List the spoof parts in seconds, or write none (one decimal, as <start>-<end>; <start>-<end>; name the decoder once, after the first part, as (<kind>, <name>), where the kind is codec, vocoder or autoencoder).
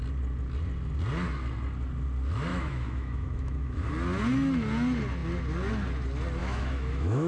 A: 2.5-3.9 (autoencoder, DAC-VAE); 6.4-7.3